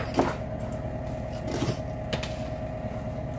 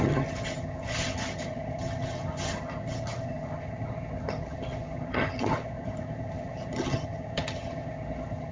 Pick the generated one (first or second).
second